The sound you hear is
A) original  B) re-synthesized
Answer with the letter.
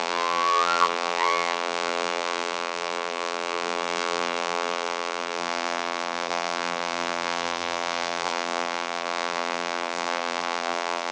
B